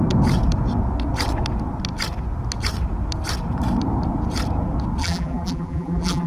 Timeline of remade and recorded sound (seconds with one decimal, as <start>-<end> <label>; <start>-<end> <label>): 0.0-5.0 recorded; 5.0-6.3 remade